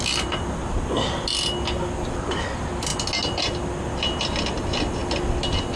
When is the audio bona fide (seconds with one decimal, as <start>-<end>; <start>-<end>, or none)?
0.0-5.8